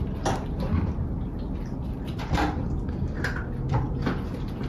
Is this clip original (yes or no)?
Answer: yes